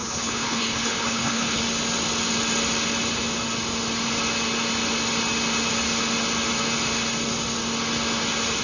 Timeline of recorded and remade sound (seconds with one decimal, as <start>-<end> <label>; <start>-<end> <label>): 0.0-1.6 remade; 1.6-8.6 recorded